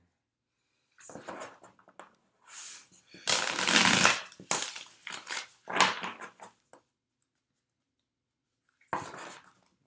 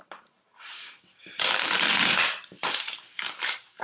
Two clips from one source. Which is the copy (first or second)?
second